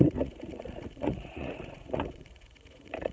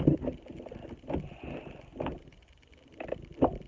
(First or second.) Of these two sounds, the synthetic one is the first